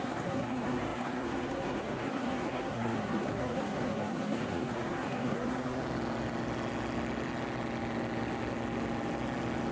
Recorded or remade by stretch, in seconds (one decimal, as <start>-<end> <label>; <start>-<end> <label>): 0.0-5.8 remade; 5.8-9.7 recorded